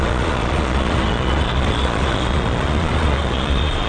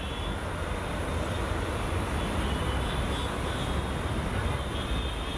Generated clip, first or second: first